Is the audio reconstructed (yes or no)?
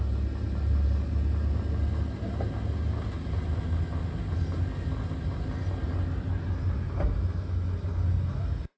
no